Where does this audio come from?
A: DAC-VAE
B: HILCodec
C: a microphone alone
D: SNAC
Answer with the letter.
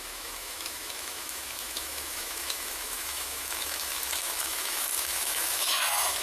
A